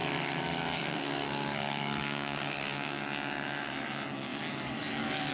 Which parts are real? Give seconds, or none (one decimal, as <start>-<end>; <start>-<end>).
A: 3.0-4.3